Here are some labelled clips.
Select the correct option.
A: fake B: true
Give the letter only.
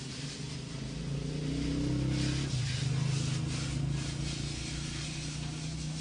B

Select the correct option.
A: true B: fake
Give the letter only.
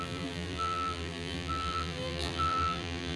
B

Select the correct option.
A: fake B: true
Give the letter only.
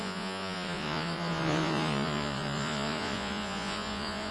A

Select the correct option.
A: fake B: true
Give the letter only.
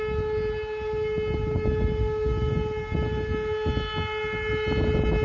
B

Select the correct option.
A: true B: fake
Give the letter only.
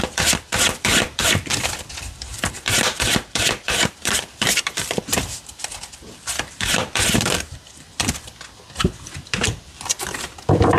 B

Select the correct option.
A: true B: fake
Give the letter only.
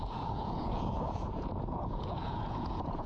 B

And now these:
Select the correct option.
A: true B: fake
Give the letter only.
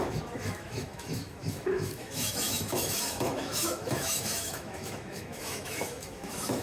B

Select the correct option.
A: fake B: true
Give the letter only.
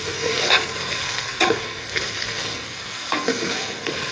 A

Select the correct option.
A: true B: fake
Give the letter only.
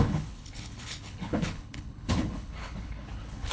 B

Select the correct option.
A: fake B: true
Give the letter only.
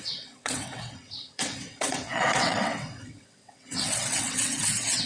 A